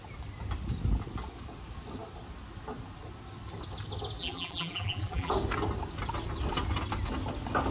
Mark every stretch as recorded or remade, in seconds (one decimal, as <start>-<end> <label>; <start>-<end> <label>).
0.0-4.2 recorded; 4.2-5.3 remade; 5.3-7.7 recorded